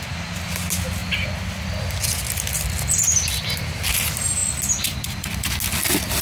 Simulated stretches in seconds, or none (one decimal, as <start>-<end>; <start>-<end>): none